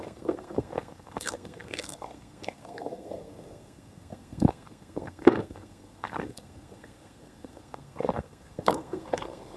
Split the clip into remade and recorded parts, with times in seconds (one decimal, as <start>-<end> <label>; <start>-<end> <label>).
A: 0.0-9.6 remade